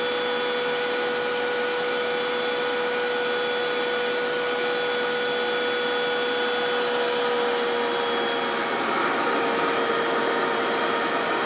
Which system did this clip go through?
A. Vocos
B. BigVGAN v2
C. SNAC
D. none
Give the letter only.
D